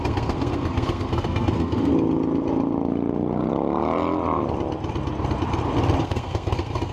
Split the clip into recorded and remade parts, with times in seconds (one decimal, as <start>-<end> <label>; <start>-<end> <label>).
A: 0.0-1.9 remade; 1.9-6.0 recorded; 6.0-6.9 remade